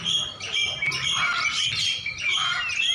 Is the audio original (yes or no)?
yes